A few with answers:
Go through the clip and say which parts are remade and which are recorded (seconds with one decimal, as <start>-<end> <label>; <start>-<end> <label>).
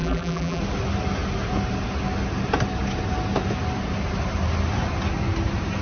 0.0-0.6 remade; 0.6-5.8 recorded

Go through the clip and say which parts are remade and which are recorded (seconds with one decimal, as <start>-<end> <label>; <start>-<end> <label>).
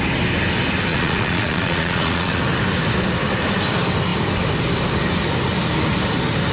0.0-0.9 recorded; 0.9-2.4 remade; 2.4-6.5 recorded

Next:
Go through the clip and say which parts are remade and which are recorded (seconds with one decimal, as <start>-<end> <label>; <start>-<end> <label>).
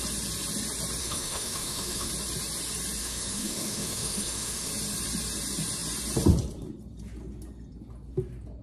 0.0-1.0 recorded; 1.0-2.1 remade; 2.1-3.0 recorded; 3.0-4.7 remade; 4.7-8.6 recorded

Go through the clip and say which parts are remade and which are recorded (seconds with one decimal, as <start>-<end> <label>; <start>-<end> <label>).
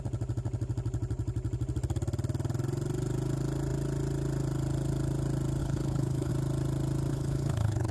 0.0-5.6 recorded; 5.6-6.3 remade; 6.3-7.1 recorded; 7.1-7.9 remade